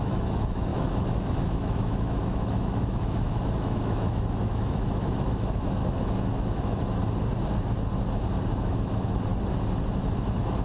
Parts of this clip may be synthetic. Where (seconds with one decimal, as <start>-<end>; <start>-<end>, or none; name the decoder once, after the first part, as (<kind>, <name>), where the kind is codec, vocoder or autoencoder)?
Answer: 0.0-7.0 (autoencoder, DAC-VAE); 8.4-9.3; 10.2-10.6